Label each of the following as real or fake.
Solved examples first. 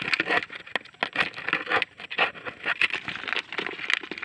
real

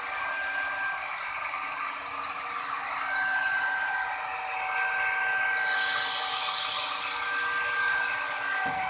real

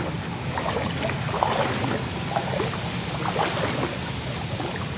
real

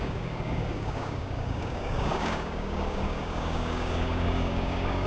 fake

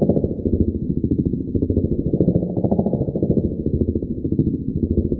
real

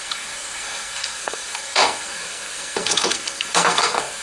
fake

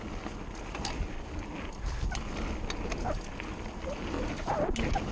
real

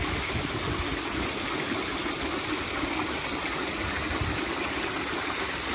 real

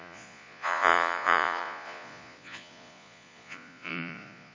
fake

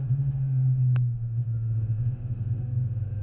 fake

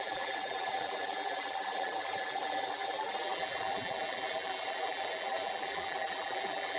fake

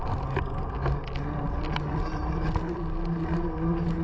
real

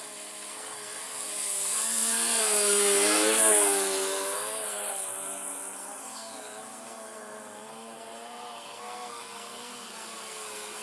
fake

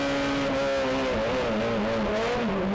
real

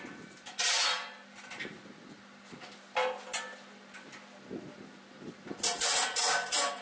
real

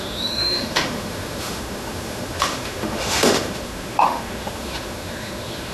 fake